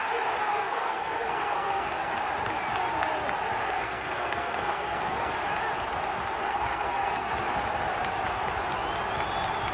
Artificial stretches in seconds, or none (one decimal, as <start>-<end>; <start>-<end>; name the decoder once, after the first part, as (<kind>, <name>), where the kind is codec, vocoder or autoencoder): 0.5-2.1 (codec, SNAC); 3.6-5.3; 6.4-7.3